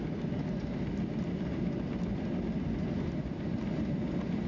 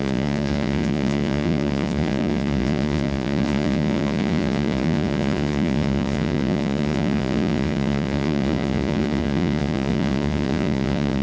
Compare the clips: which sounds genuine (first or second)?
first